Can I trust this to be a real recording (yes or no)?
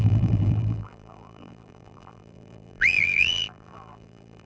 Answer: no